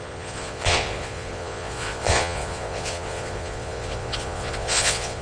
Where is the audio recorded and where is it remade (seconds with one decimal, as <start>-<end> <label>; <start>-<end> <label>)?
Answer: 0.0-5.2 remade